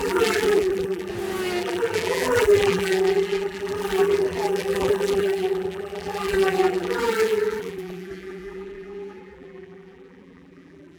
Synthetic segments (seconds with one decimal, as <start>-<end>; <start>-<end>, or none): 0.0-1.1; 1.6-11.0